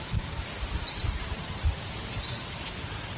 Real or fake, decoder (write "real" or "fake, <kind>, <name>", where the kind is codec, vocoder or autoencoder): fake, vocoder, BigVGAN v2